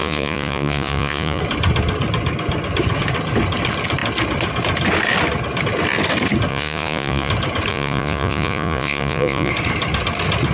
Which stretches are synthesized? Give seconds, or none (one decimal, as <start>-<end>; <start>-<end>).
0.0-1.4; 6.5-7.3; 7.7-9.5